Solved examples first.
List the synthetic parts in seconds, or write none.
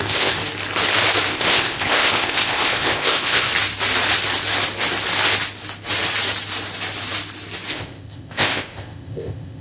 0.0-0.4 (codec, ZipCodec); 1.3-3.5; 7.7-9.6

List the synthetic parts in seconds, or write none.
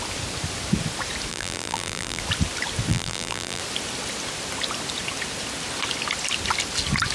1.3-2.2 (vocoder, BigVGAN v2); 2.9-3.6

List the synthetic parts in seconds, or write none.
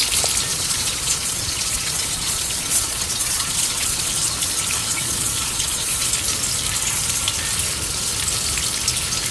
0.5-4.1 (vocoder, Vocos); 4.8-6.1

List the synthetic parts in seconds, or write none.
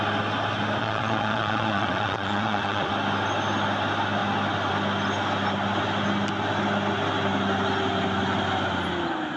0.8-2.9 (vocoder, Vocos)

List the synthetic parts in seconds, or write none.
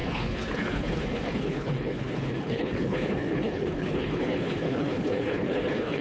0.0-6.0 (codec, HILCodec)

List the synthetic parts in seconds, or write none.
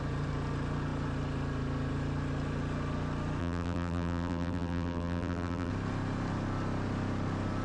3.4-5.7 (vocoder, BigVGAN v2)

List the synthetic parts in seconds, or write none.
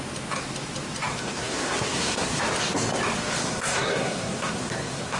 1.1-2.4 (codec, SNAC); 3.4-5.2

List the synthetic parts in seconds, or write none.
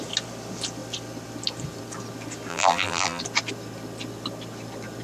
2.5-3.2 (vocoder, BigVGAN v2)